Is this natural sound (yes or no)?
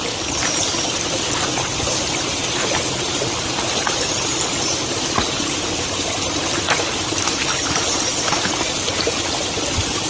yes